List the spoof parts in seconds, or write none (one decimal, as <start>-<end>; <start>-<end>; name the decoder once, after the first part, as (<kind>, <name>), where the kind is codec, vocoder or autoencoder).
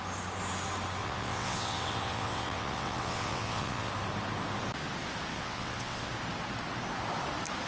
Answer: 1.0-3.9 (vocoder, WaveNeXt); 5.3-6.1